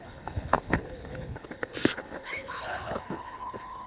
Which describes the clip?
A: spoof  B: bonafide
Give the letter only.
A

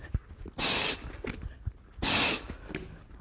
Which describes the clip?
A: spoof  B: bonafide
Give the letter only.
B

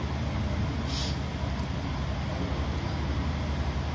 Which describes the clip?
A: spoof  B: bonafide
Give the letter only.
B